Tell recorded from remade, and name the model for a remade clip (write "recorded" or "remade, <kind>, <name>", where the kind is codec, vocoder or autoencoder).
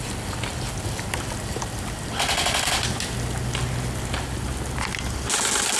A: recorded